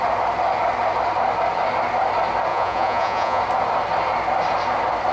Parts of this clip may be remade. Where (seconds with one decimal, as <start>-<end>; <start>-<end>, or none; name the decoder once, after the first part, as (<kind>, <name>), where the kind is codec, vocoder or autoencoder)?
2.5-3.4 (vocoder, Vocos)